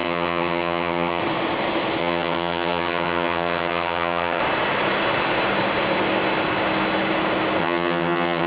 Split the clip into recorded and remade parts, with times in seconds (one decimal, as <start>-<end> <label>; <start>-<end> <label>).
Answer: 0.0-1.2 remade; 1.2-2.0 recorded; 2.0-4.4 remade; 4.4-7.6 recorded; 7.6-8.5 remade